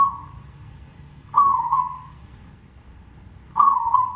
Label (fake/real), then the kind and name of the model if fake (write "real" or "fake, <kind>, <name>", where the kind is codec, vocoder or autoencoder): fake, codec, SNAC